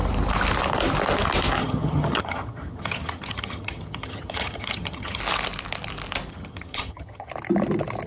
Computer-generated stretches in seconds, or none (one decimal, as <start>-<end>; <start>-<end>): 1.6-5.2; 6.3-7.3